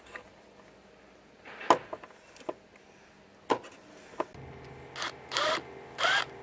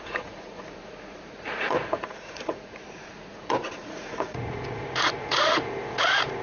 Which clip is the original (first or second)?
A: first